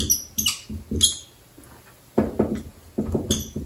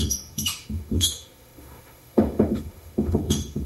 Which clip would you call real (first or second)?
first